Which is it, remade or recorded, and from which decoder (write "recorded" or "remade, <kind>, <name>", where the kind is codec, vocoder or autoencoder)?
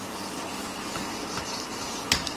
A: recorded